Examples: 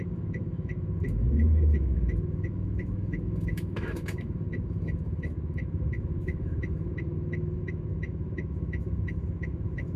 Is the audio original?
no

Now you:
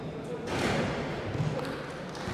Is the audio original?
yes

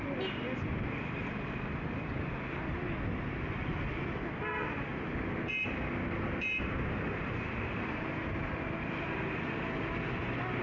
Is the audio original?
yes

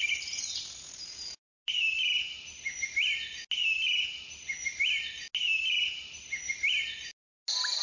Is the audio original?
yes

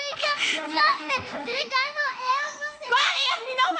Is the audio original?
no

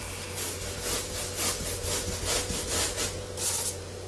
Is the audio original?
yes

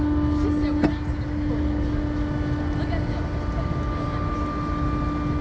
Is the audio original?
yes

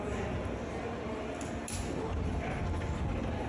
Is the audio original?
yes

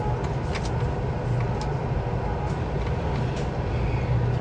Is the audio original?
yes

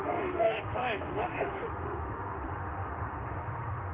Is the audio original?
no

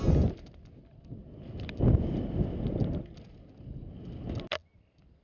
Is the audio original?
yes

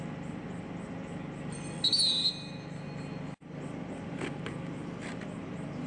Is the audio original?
yes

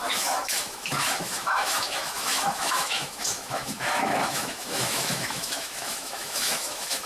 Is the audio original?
no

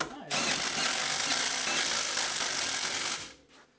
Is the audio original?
yes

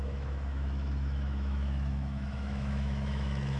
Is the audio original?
no